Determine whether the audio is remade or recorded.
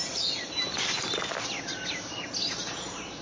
recorded